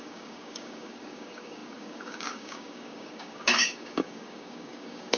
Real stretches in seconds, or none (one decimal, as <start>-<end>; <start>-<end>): none